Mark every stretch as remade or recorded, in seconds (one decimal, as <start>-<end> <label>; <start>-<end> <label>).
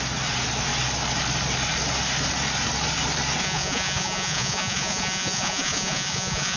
0.0-3.4 recorded; 3.4-6.6 remade